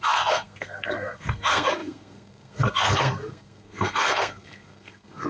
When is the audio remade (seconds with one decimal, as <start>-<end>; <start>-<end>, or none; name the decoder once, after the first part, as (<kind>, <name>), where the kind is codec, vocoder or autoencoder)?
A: 0.0-5.3 (codec, SNAC)